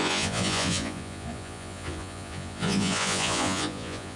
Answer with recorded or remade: remade